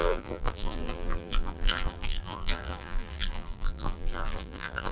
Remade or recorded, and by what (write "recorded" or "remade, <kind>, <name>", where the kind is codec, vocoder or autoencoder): remade, vocoder, BigVGAN v2